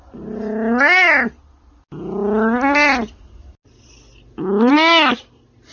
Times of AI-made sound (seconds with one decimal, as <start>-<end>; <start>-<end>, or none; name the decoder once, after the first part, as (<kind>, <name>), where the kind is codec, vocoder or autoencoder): none